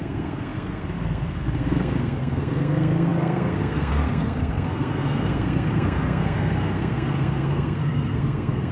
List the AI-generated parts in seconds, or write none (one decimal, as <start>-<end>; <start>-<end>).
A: 0.0-8.7